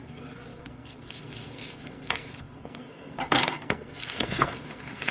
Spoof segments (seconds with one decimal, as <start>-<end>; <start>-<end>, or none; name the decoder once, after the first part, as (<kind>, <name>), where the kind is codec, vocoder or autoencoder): 0.0-5.1 (codec, SNAC)

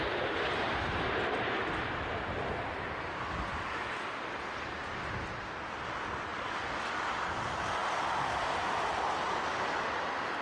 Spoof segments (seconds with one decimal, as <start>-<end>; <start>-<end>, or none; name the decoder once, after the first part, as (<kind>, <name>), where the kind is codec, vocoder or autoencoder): none

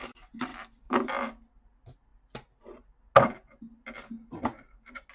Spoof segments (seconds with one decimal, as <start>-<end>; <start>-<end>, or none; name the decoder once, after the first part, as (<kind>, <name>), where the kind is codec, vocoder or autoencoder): none

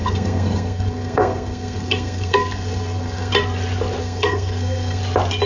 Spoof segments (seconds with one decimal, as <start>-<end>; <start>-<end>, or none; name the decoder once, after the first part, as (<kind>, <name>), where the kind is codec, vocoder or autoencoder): 0.0-3.3 (codec, SNAC); 4.0-5.0